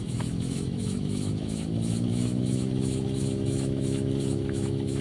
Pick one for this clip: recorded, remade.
remade